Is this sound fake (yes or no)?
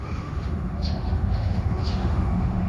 yes